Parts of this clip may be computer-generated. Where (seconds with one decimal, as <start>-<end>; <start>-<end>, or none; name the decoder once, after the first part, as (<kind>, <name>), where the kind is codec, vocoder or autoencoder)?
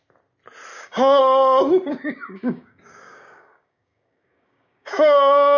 0.7-1.2 (codec, DAC); 1.9-5.6